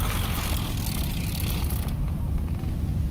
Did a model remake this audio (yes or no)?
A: no